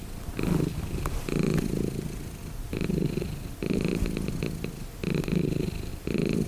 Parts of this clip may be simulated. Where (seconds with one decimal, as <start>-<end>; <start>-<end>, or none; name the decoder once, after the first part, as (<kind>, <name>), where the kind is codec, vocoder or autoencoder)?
2.4-3.9 (vocoder, BigVGAN v2); 5.9-6.5